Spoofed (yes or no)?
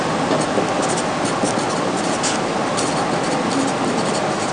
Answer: no